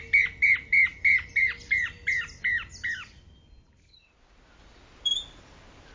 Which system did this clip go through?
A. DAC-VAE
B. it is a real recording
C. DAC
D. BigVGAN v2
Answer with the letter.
B